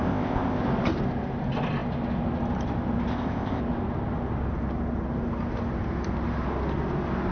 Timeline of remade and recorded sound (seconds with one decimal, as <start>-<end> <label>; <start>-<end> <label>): 0.0-0.6 remade; 0.6-3.1 recorded; 3.1-3.6 remade; 3.6-7.3 recorded